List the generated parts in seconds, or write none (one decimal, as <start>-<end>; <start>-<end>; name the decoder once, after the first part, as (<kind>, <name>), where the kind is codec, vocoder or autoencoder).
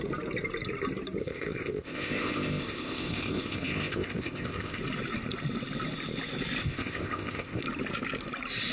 1.2-4.8 (codec, ZipCodec); 6.6-7.6